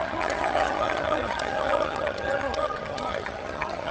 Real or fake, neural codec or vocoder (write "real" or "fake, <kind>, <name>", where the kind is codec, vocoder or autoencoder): fake, vocoder, HiFi-GAN